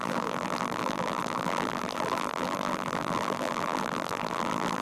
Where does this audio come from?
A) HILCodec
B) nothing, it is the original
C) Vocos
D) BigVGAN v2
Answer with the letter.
D